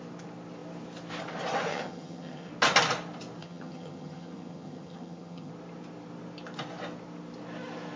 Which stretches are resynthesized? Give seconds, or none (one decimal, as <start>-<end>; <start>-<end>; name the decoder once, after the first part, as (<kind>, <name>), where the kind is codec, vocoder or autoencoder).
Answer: 1.7-2.5 (vocoder, HiFi-GAN); 3.4-5.5